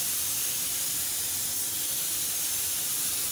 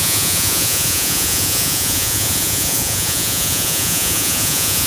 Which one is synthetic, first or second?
second